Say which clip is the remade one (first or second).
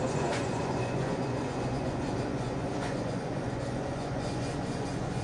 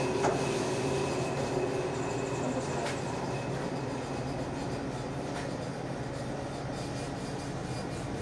first